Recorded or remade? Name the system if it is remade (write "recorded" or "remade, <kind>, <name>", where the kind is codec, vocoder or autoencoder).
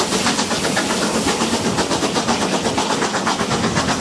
recorded